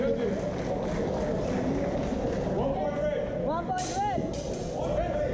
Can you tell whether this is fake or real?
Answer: real